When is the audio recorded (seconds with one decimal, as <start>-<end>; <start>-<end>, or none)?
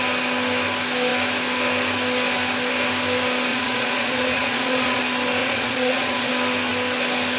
0.0-3.5; 5.0-5.4; 6.3-7.4